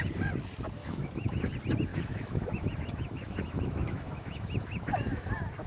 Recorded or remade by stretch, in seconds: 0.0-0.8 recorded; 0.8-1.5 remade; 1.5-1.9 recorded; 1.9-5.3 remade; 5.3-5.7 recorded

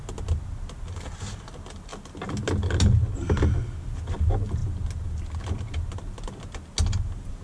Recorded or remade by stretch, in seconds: 0.0-7.4 recorded

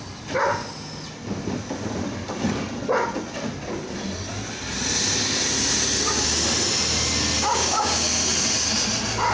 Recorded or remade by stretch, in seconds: 0.0-7.5 recorded; 7.5-8.1 remade; 8.1-9.3 recorded

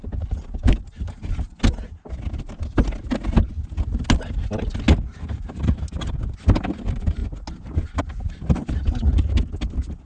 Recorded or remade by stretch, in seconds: 0.0-10.1 recorded

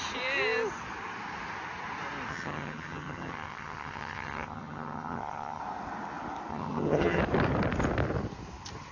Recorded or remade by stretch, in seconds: 0.0-2.3 recorded; 2.3-5.6 remade; 5.6-6.5 recorded; 6.5-7.2 remade; 7.2-8.9 recorded

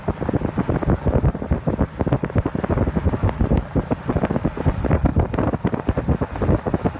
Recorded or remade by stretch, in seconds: 0.0-7.0 recorded